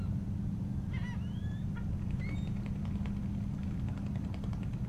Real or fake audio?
real